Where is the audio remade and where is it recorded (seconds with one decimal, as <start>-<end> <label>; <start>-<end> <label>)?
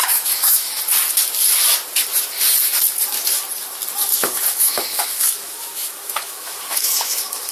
0.0-0.8 remade; 0.8-4.1 recorded; 4.1-7.5 remade